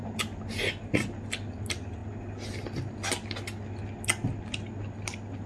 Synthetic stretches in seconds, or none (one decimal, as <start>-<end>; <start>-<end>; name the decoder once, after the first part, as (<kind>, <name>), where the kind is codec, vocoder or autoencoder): none